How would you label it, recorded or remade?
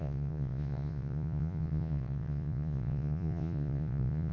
remade